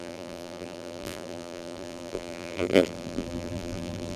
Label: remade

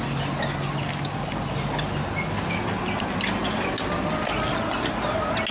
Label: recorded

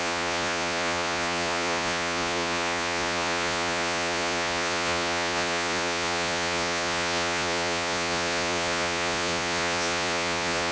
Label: remade